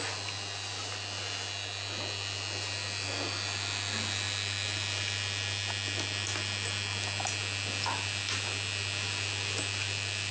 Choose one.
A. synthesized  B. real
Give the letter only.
B